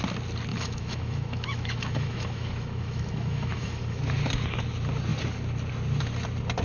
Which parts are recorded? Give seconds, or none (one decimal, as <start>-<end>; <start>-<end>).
0.0-0.5; 4.0-6.6